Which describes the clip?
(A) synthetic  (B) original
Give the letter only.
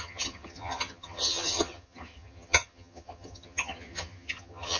A